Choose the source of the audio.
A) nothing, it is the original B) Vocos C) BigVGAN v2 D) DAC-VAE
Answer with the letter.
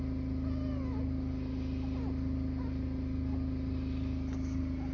A